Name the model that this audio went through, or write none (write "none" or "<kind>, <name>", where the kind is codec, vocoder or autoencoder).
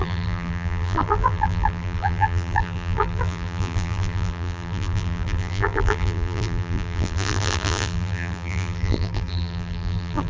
vocoder, BigVGAN v2